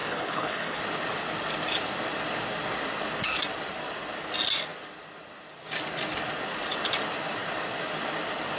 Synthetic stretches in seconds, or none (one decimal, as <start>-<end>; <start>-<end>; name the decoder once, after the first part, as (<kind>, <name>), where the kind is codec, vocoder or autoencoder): 0.0-0.8 (codec, HILCodec)

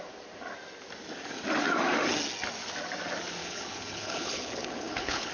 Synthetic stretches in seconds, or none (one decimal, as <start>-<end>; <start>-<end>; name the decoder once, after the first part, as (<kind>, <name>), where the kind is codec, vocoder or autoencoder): 3.4-5.3 (codec, HILCodec)

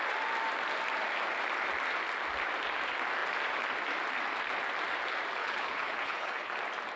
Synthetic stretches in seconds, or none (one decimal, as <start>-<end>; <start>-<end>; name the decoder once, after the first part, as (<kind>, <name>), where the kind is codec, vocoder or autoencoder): 5.4-6.5 (codec, HILCodec)

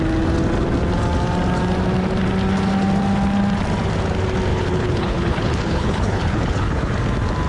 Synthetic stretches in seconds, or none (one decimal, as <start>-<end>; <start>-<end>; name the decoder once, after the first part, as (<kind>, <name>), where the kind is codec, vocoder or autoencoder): 4.5-6.9 (codec, HILCodec)

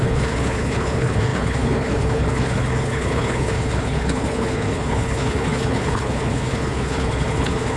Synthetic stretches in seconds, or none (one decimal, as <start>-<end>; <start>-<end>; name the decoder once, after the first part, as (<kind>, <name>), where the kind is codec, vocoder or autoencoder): 0.0-7.8 (codec, HILCodec)